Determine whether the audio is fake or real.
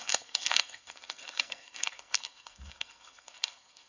fake